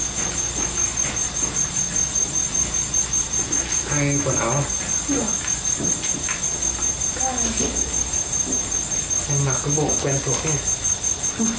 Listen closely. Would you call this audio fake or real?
real